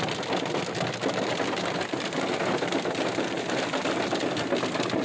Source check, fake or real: real